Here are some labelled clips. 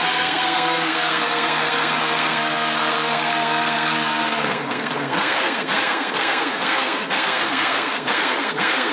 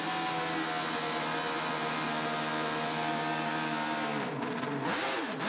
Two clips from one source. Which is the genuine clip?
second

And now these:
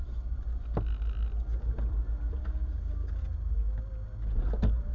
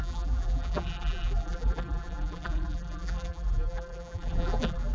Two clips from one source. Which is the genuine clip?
first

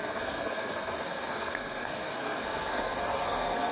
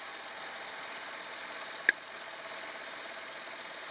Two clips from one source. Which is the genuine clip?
second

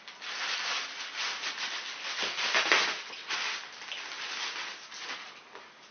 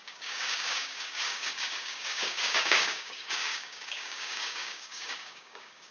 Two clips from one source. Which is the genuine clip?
first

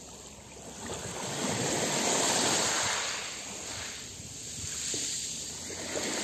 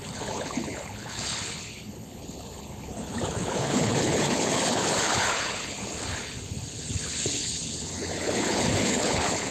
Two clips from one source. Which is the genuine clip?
first